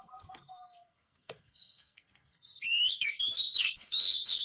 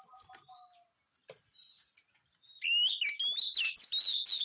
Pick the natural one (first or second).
second